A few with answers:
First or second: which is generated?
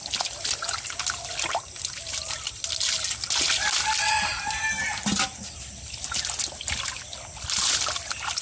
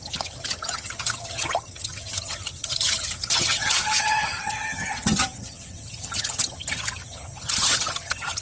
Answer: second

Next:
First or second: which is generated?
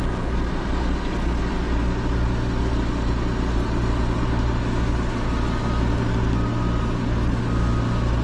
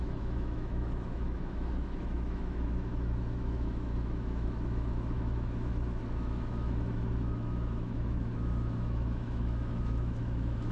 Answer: second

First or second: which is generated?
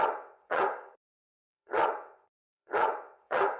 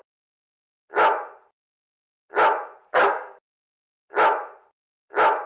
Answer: first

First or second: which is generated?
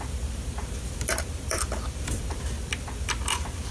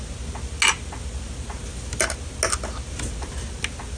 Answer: first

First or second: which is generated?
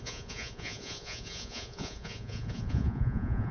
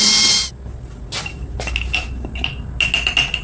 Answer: first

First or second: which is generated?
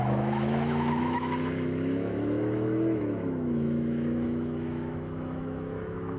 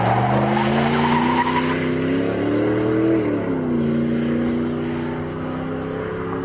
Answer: first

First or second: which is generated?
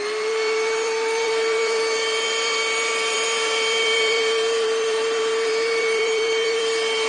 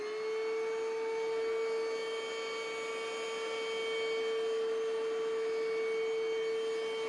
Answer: first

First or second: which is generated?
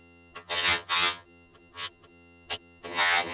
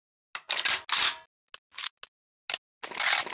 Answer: first